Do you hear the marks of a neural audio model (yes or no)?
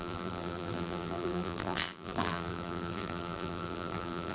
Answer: yes